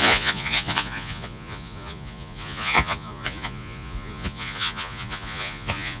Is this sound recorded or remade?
remade